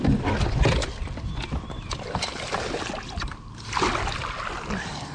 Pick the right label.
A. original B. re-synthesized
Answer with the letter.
A